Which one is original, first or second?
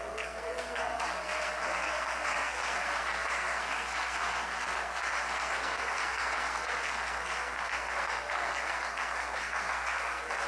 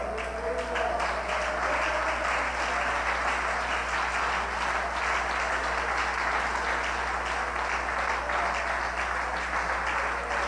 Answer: second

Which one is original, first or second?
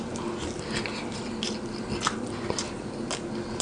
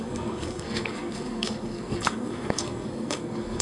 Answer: first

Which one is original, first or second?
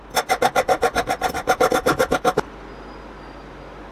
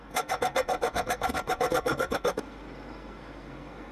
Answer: first